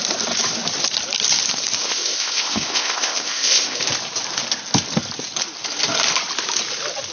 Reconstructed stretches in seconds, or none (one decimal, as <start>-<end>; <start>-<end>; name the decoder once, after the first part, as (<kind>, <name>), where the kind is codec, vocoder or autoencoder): 1.8-3.8 (codec, ZipCodec)